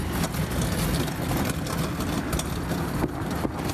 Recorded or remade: recorded